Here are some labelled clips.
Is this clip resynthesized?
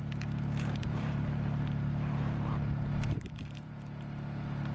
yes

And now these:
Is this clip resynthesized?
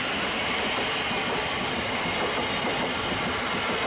no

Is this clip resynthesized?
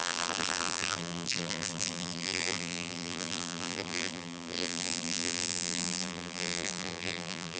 yes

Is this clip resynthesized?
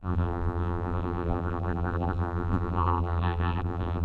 yes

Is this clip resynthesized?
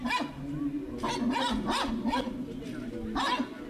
no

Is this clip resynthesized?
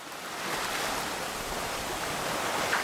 yes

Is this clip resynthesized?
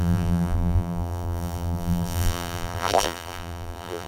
yes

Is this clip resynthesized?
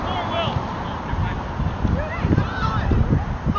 no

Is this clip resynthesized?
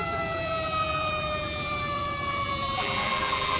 yes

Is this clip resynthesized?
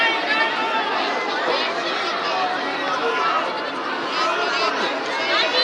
no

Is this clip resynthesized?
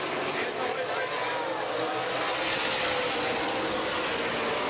no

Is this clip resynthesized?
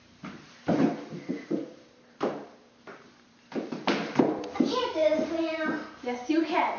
yes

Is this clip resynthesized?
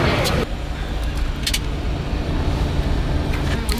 no